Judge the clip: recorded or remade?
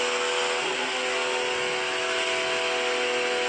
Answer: recorded